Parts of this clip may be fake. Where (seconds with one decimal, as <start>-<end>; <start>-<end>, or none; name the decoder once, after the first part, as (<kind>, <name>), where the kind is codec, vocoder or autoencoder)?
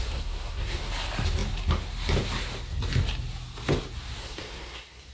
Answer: 0.0-0.9 (codec, SNAC); 4.2-5.1